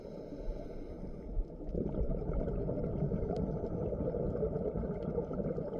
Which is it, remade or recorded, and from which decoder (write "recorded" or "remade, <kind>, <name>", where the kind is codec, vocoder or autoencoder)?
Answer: recorded